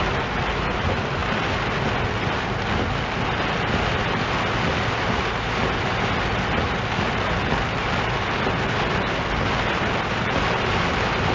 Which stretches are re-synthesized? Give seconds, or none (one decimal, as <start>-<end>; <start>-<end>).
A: none